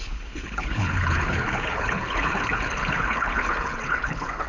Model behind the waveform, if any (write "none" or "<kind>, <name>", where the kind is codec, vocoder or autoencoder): codec, HILCodec